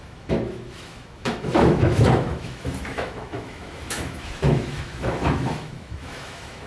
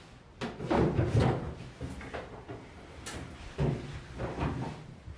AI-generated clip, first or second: first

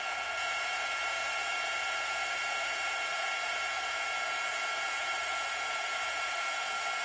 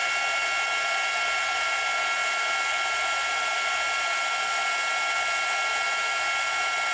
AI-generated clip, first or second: first